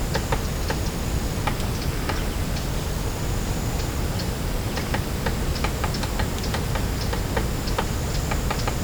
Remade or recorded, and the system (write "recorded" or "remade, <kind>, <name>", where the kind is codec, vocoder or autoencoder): recorded